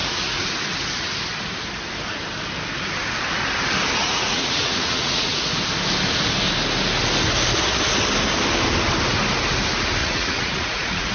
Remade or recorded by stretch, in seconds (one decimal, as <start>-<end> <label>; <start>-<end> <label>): 0.0-0.5 remade; 0.5-4.0 recorded; 4.0-5.5 remade; 5.5-10.0 recorded; 10.0-11.1 remade